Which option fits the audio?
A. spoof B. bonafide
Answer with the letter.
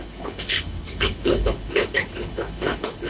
A